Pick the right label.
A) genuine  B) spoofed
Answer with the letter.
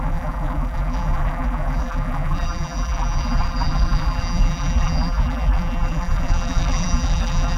B